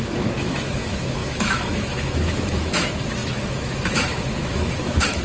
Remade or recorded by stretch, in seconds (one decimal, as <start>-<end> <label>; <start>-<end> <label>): 0.0-5.2 remade